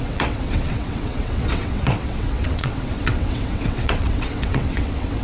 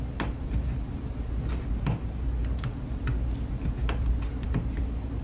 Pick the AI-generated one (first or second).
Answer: first